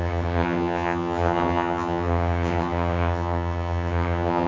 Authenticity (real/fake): fake